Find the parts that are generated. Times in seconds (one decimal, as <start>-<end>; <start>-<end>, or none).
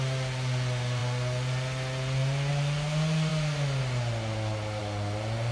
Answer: none